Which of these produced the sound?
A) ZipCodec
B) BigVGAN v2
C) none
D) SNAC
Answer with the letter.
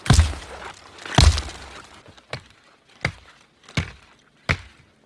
C